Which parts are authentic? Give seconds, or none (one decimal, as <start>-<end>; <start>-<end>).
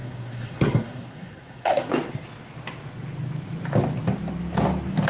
1.9-5.1